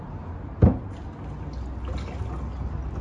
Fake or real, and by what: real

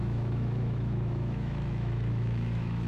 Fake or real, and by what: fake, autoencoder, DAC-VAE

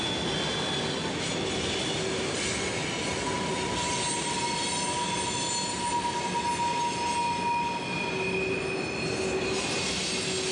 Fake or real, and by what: real